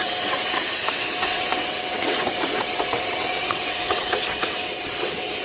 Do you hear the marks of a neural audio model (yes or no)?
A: yes